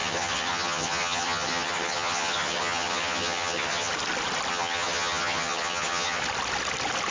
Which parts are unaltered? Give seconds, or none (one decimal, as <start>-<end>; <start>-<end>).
3.9-4.5; 6.2-7.1